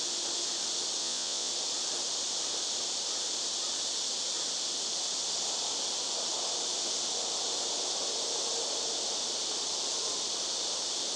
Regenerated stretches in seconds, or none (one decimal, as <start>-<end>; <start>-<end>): 1.0-1.5